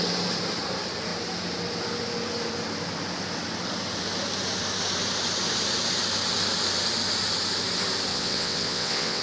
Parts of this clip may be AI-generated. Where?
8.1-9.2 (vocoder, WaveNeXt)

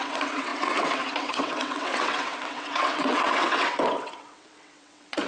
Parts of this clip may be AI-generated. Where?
0.0-5.3 (vocoder, WaveNeXt)

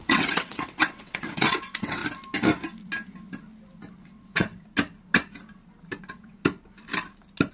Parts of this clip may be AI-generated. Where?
0.0-2.0 (vocoder, WaveNeXt); 3.9-4.5; 6.0-6.4

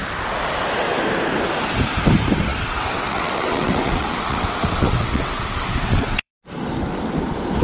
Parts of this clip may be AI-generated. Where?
2.5-6.3 (vocoder, WaveNeXt)